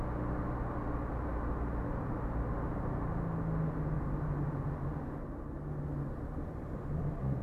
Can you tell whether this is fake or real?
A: real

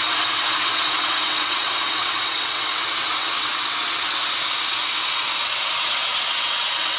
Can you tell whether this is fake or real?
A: fake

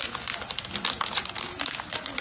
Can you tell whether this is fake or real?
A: fake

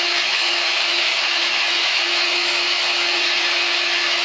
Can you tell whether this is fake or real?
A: fake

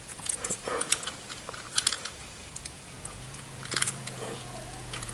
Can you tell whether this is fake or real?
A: fake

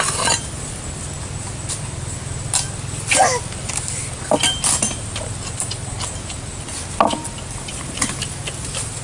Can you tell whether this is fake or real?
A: real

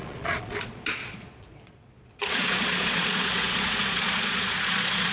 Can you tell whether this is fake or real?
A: fake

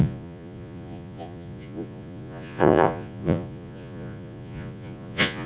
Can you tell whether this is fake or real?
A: fake